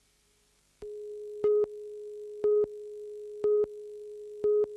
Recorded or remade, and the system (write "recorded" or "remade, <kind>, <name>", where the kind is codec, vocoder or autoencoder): recorded